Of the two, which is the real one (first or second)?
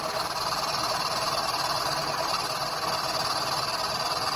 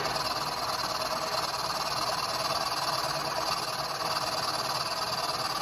second